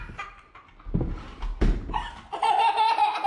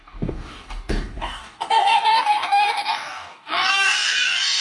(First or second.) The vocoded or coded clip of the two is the second